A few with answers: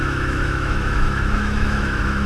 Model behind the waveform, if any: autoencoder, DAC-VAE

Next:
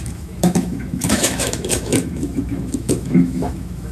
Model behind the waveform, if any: autoencoder, DAC-VAE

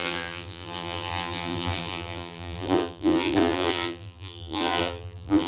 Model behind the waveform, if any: vocoder, BigVGAN v2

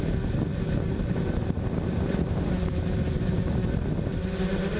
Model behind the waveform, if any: none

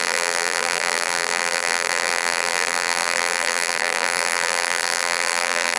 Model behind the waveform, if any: vocoder, BigVGAN v2